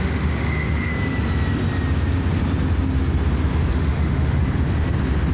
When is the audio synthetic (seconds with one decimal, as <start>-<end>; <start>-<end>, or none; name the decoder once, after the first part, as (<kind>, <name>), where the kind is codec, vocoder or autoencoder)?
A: 0.0-0.9 (autoencoder, DAC-VAE); 3.7-4.4